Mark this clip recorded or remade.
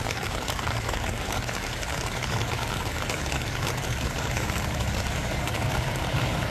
remade